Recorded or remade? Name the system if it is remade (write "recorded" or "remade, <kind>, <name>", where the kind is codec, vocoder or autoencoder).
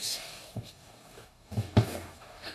remade, codec, DAC